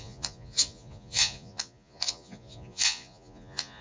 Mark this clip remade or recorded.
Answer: remade